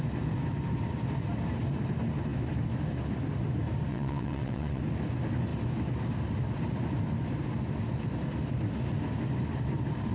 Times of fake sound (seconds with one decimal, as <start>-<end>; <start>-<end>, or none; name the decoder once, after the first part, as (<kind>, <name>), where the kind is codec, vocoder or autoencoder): 3.9-4.8 (vocoder, WaveNeXt)